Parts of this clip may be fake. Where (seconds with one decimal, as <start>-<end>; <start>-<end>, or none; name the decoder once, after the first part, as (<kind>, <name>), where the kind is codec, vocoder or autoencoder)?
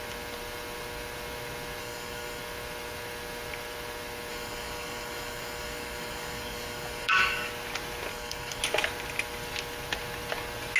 1.8-2.4 (codec, DAC); 4.3-7.5; 8.1-8.6